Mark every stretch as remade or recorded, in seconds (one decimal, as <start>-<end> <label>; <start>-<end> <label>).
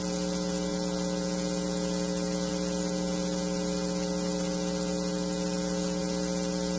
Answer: 0.0-6.8 recorded